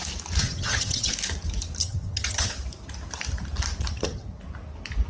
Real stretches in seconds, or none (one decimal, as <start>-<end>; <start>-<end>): 0.0-0.4; 1.1-1.8; 2.5-3.9; 4.4-5.1